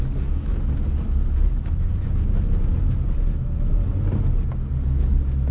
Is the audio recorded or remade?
recorded